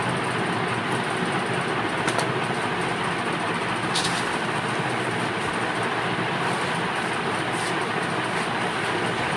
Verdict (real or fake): real